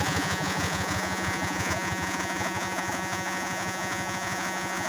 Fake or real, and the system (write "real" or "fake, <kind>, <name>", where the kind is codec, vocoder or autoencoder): fake, vocoder, Vocos